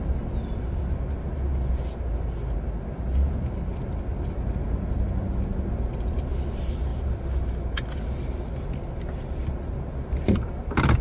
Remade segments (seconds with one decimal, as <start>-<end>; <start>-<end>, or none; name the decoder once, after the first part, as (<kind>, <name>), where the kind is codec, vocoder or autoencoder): none